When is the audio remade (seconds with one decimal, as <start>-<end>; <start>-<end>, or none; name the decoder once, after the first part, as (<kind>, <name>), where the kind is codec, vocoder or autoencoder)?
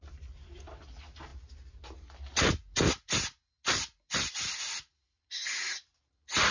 none